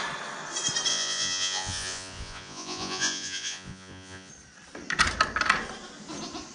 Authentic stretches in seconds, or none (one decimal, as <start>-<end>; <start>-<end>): 0.0-0.9; 4.3-6.5